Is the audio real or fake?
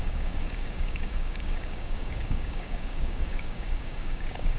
fake